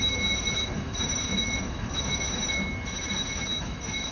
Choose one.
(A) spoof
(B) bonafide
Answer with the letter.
A